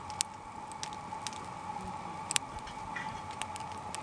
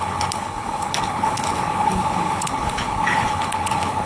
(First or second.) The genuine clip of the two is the first